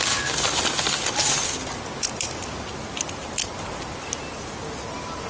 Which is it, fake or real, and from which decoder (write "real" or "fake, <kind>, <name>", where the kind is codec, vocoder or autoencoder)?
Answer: real